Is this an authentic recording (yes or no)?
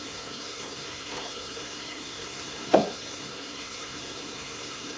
no